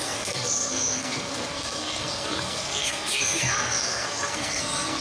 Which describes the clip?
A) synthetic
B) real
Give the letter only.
A